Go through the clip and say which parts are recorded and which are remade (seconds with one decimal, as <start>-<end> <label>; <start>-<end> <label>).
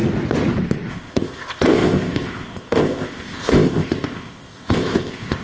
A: 0.0-0.9 recorded; 0.9-5.4 remade